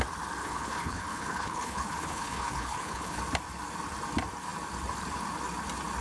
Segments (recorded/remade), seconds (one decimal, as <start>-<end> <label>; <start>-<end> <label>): 0.0-0.4 recorded; 0.4-3.2 remade; 3.2-6.0 recorded